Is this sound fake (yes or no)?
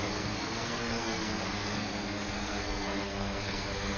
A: yes